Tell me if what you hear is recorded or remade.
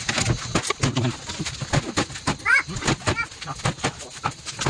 recorded